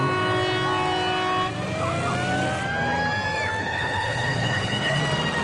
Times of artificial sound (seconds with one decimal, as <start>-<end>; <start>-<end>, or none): 3.6-5.0